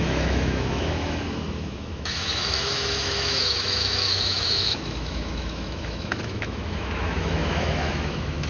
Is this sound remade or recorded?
remade